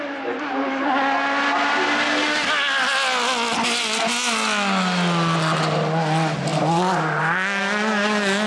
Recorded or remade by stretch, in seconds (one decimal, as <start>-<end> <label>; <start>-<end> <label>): 0.0-8.5 recorded